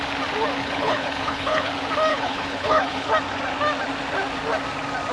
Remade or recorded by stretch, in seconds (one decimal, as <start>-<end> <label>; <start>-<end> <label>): 0.0-0.6 recorded; 0.6-1.7 remade; 1.7-2.1 recorded; 2.1-3.1 remade; 3.1-5.1 recorded